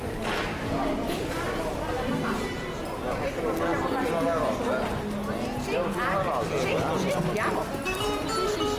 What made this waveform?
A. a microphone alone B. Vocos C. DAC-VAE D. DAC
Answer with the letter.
A